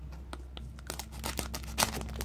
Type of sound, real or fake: real